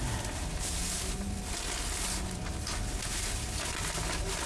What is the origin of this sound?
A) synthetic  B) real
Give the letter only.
B